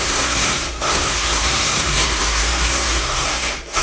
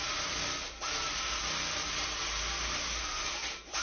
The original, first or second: second